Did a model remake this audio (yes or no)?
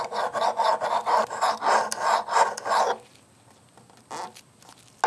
no